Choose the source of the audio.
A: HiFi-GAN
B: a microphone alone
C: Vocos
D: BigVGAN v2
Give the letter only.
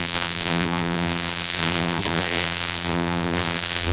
D